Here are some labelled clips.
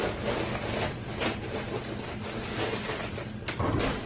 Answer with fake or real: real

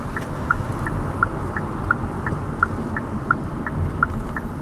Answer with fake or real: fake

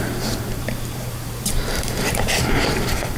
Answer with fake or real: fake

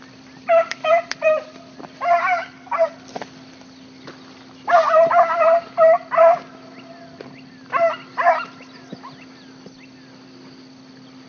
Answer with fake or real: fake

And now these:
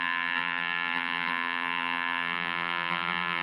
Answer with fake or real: fake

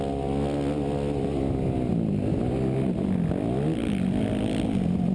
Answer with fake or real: real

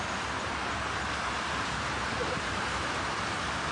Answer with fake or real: fake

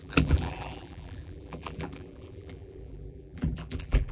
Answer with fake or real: fake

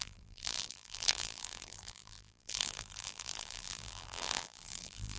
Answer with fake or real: fake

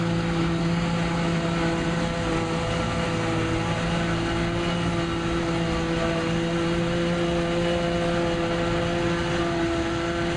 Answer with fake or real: real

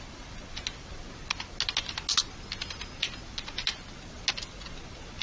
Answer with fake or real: real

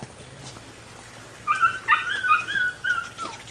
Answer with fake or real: real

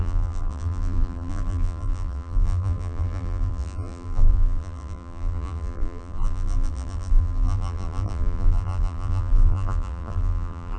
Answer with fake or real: fake